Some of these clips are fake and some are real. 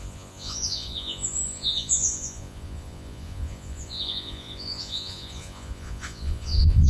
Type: fake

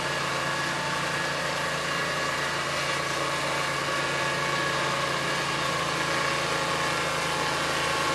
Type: real